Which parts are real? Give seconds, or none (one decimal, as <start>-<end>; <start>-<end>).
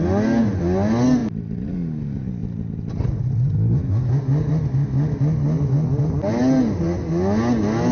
0.0-7.9